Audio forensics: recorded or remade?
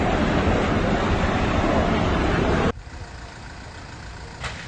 recorded